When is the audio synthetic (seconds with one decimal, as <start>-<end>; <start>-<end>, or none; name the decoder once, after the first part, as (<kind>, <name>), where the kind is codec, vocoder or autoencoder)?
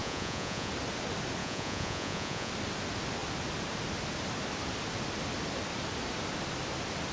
0.0-0.7 (vocoder, Vocos); 1.4-2.5